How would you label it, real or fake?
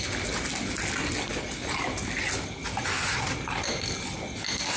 real